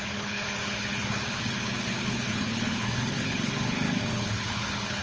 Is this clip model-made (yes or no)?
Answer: yes